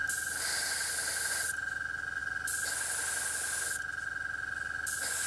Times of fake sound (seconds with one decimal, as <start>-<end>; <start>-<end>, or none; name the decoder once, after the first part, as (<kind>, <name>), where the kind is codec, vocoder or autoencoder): none

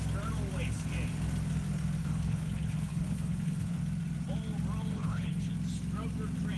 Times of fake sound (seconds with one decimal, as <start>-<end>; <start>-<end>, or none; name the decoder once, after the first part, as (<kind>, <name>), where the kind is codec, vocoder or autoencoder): 2.0-3.8 (codec, HILCodec); 4.9-5.5

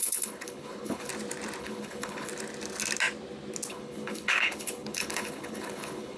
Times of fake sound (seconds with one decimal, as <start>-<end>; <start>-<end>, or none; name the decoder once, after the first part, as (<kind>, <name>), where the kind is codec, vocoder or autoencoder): 0.0-1.1 (codec, HILCodec); 1.6-2.3; 3.7-6.2

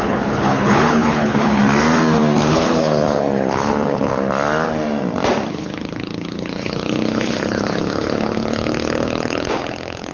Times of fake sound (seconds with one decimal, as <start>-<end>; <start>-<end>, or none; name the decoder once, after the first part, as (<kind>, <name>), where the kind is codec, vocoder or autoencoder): 0.0-1.6 (codec, HILCodec); 2.5-4.1; 5.5-10.1

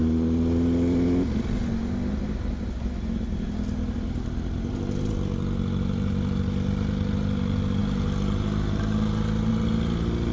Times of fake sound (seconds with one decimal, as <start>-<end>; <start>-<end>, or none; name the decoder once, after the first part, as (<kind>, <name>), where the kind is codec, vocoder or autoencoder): none

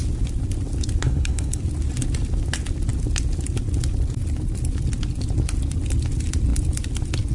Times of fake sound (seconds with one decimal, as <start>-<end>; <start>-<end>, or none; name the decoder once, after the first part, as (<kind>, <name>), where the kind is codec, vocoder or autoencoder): 1.0-1.6 (codec, HILCodec)

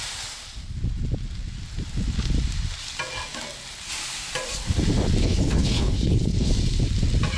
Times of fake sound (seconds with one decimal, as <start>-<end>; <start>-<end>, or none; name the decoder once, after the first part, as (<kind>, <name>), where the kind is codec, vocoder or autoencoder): 5.2-6.5 (codec, HILCodec)

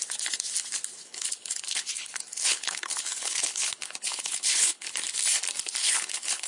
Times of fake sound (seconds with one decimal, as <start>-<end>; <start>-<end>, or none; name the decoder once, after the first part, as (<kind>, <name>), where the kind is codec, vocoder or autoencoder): 1.0-4.9 (codec, HILCodec); 5.8-6.5